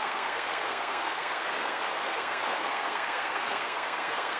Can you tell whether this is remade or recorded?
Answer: remade